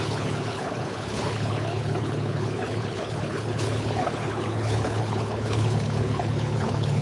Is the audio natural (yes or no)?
no